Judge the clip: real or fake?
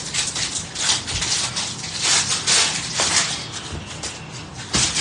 real